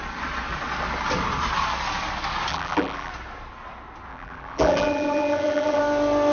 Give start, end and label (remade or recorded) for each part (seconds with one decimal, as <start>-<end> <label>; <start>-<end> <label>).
0.0-2.5 recorded; 2.5-3.1 remade; 3.1-4.1 recorded; 4.1-5.8 remade; 5.8-6.3 recorded